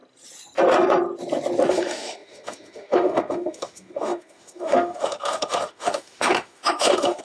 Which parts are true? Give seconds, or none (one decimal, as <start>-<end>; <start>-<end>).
0.0-1.7